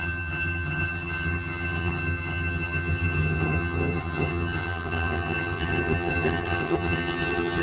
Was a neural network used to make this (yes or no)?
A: yes